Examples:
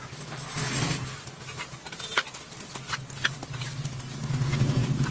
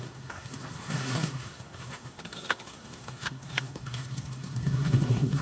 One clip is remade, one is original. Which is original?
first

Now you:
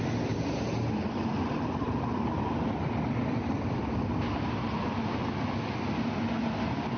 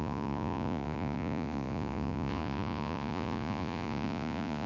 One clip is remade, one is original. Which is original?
first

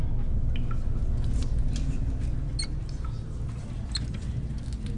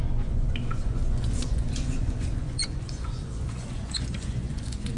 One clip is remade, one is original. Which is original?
first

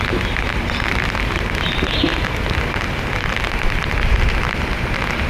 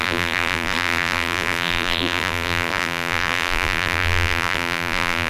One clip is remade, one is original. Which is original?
first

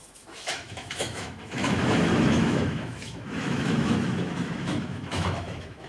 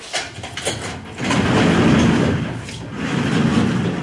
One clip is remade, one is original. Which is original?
second